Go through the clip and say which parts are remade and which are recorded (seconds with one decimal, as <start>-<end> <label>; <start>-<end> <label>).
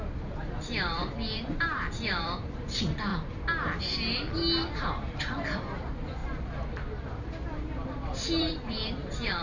0.0-3.1 remade; 3.1-5.0 recorded; 5.0-6.2 remade; 6.2-8.4 recorded; 8.4-9.4 remade